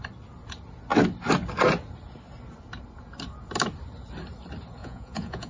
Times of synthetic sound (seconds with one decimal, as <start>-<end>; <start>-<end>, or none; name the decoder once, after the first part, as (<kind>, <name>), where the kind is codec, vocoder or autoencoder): 4.8-5.5 (vocoder, Vocos)